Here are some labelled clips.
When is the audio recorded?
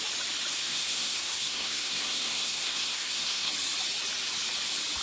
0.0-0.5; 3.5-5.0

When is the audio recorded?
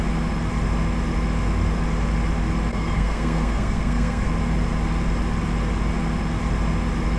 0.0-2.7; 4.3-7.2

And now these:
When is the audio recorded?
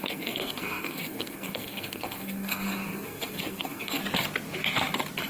4.0-5.3